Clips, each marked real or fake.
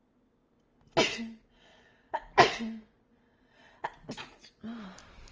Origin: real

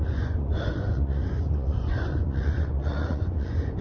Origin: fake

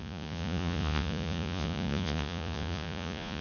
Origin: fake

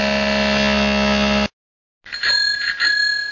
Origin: real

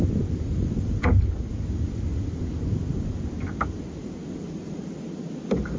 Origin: real